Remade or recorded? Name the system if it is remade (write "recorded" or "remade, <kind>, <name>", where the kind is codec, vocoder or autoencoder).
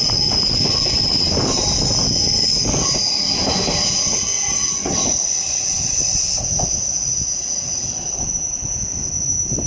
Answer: recorded